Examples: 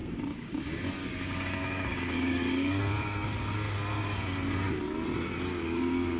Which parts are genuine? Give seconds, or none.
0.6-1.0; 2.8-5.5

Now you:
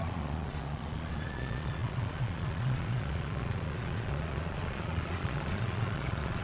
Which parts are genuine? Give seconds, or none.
none

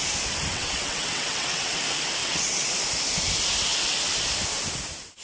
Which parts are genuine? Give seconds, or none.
0.0-0.5; 1.8-2.2; 2.7-5.2

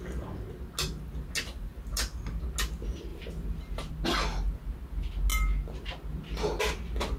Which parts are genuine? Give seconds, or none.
0.0-3.1; 3.9-7.2

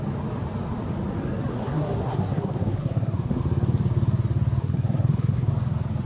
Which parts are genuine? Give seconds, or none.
0.0-1.5; 3.4-4.6; 5.5-6.1

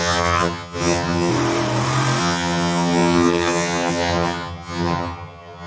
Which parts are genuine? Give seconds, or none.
1.3-2.2

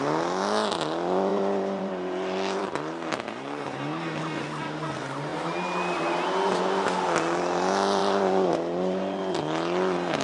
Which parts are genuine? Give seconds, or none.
0.0-1.3; 3.6-8.0; 9.2-10.2